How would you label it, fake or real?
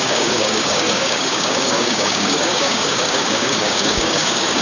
fake